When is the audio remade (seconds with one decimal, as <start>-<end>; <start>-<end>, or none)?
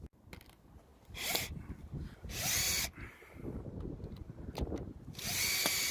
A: none